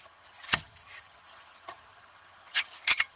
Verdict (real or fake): fake